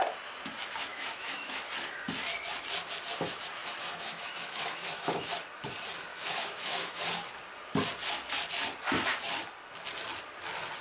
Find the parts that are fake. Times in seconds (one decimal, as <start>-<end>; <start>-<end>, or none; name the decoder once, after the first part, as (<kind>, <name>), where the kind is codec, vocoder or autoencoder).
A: 0.9-1.6 (autoencoder, DAC-VAE); 3.6-5.3; 6.1-7.0